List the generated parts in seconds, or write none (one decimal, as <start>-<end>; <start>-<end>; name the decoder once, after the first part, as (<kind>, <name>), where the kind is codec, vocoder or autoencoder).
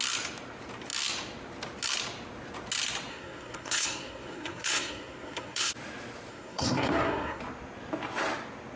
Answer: 3.1-5.7 (codec, SNAC); 6.3-7.4